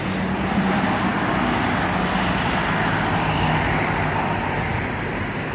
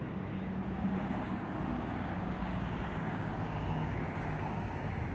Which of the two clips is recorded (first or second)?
first